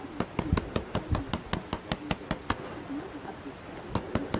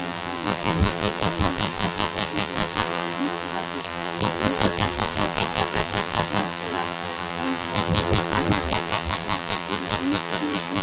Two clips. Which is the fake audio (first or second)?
second